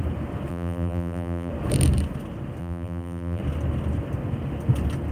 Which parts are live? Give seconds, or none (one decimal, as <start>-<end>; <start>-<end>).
0.0-0.5; 1.5-2.6; 3.4-5.1